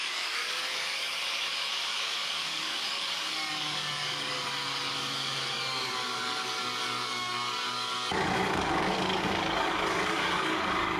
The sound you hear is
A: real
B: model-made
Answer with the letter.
B